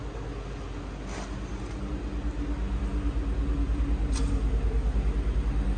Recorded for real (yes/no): yes